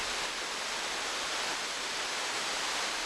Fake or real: real